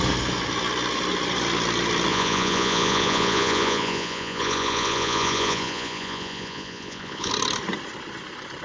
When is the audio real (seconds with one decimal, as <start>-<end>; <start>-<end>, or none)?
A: 0.0-2.1; 7.3-8.6